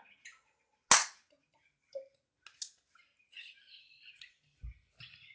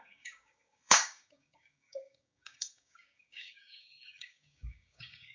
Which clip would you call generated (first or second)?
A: second